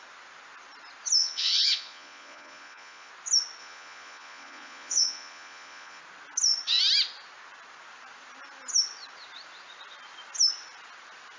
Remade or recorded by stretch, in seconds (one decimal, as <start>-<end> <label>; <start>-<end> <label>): 0.0-1.2 recorded; 1.2-3.1 remade; 3.1-3.6 recorded; 3.6-6.0 remade; 6.0-11.4 recorded